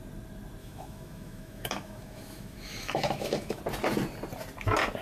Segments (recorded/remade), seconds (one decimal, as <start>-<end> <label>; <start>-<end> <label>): 0.0-0.6 recorded; 0.6-3.6 remade; 3.6-5.0 recorded